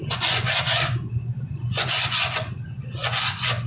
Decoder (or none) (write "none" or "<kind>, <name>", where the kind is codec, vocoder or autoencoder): vocoder, Vocos